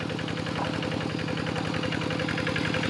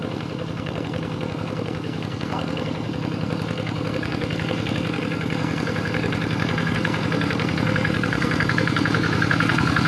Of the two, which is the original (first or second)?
first